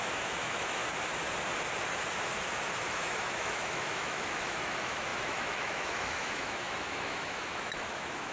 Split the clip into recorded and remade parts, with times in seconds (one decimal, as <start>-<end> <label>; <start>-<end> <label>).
0.0-0.8 remade; 0.8-2.9 recorded; 2.9-8.3 remade